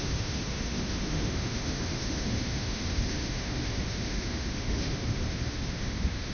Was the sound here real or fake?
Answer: fake